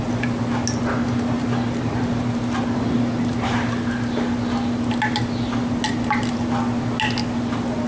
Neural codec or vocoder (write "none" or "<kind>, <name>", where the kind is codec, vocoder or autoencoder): none